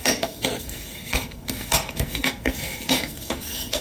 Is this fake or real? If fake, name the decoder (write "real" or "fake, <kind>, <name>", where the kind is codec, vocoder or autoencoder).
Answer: fake, codec, SNAC